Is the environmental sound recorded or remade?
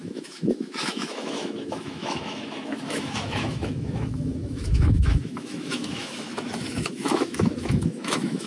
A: remade